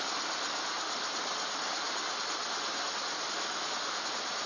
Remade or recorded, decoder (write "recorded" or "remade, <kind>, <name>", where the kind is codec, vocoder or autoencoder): recorded